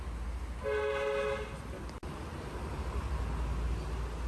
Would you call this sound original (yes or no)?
yes